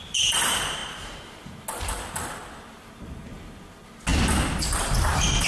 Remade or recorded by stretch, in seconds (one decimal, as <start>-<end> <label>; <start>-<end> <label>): 0.0-5.5 recorded